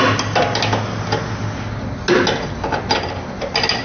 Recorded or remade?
recorded